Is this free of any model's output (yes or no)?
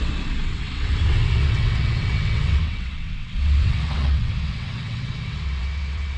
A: no